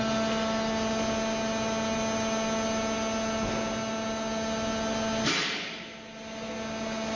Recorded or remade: recorded